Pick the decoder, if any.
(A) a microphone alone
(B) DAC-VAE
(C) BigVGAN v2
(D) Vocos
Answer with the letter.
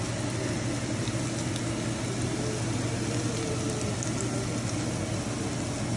A